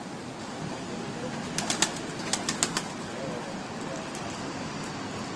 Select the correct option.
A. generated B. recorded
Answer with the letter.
B